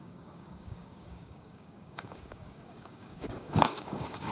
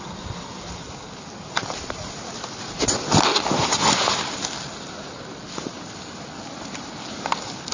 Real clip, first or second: second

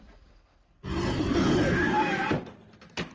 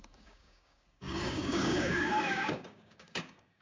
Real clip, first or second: first